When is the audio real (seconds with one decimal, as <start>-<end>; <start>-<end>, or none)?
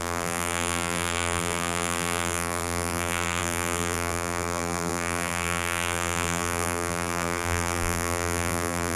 none